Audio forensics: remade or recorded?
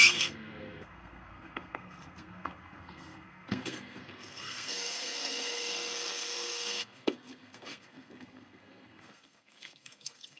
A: remade